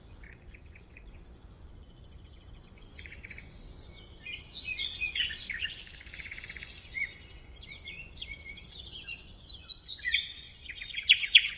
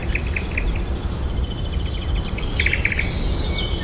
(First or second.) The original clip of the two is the second